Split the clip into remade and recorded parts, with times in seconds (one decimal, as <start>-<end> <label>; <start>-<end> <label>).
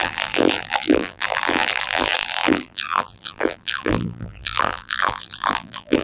0.0-6.0 remade